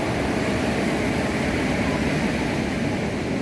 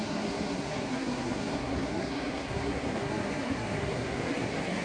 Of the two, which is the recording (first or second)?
first